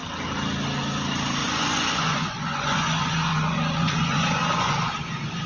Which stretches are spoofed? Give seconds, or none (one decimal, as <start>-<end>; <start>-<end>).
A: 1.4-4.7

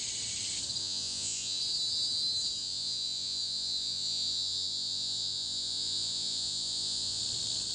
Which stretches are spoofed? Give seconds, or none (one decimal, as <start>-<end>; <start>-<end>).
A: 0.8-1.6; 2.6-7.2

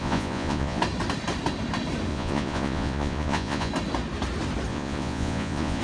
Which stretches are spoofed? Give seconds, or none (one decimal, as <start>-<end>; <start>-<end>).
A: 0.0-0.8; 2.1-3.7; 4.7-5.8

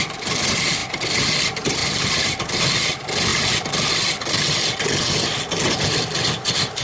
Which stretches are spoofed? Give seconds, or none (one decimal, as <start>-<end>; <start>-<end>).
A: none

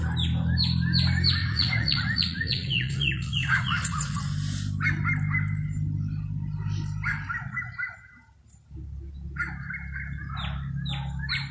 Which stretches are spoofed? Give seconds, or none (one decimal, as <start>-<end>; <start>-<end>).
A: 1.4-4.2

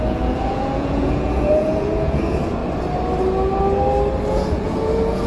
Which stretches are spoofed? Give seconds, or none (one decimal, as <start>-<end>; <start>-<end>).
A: 0.0-2.6; 4.3-5.3